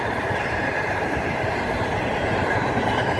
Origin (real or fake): fake